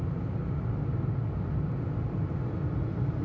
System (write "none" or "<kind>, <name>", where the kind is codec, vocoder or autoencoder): none